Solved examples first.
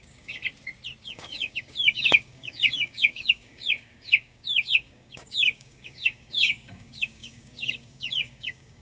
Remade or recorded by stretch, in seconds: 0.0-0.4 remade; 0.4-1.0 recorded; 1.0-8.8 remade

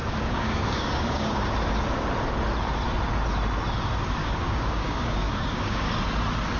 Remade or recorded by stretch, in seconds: 0.0-1.5 remade; 1.5-4.2 recorded; 4.2-5.9 remade; 5.9-6.6 recorded

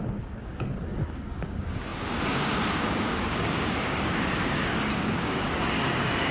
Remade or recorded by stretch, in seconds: 0.0-6.3 remade

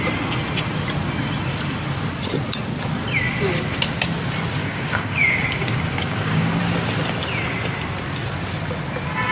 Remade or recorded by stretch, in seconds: 0.0-4.6 recorded; 4.6-6.6 remade; 6.6-9.3 recorded

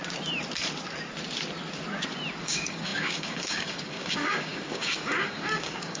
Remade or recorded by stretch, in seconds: 0.0-2.4 recorded; 2.4-6.0 remade

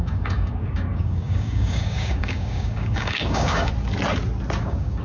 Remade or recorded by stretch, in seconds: 0.0-3.7 remade; 3.7-4.6 recorded; 4.6-5.0 remade

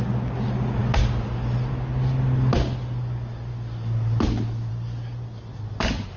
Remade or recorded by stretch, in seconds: 0.0-6.2 recorded